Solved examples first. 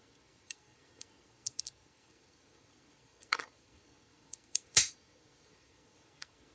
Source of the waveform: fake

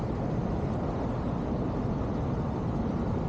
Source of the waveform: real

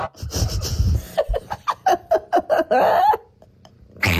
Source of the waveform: real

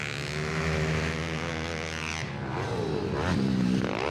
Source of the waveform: real